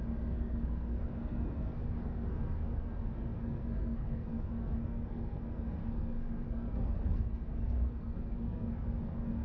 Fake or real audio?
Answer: fake